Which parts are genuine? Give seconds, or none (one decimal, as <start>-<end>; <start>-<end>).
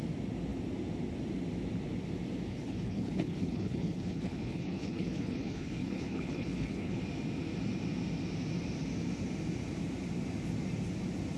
0.0-2.5; 7.0-11.4